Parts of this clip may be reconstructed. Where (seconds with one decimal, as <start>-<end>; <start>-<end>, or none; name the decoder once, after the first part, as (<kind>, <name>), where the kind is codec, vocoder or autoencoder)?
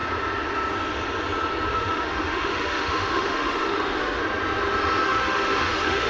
1.7-4.2 (autoencoder, DAC-VAE); 5.0-6.1